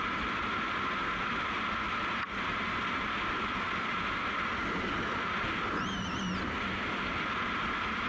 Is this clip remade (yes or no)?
no